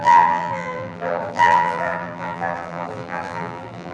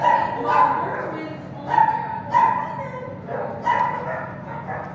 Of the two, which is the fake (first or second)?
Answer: first